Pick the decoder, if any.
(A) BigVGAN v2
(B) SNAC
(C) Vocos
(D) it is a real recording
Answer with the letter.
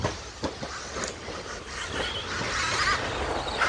D